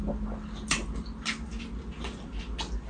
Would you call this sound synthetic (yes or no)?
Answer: no